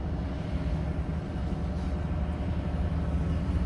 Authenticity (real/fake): real